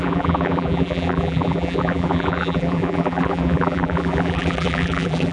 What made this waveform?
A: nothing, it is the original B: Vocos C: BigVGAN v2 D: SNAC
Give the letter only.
C